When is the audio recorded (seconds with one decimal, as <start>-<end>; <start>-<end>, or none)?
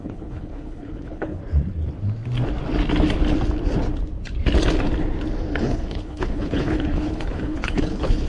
1.4-5.6